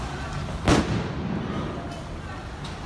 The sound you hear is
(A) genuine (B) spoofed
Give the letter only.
A